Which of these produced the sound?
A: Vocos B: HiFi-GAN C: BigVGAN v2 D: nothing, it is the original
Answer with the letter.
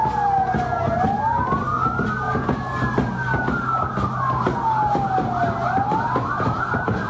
D